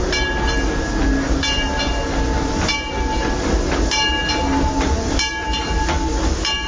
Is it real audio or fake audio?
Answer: real